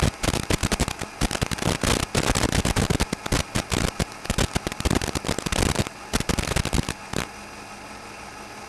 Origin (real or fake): real